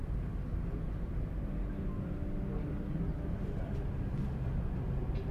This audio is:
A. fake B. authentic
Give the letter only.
B